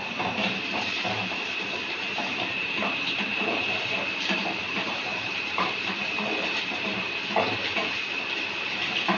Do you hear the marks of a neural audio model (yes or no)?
yes